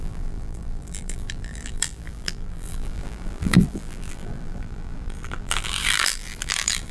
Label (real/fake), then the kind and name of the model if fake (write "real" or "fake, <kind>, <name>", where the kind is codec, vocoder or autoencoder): fake, vocoder, BigVGAN v2